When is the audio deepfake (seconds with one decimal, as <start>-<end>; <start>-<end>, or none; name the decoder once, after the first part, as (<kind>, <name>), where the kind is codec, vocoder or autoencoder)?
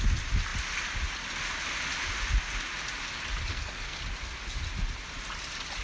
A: 3.5-4.0 (codec, SNAC)